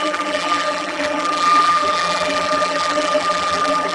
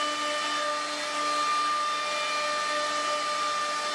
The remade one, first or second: first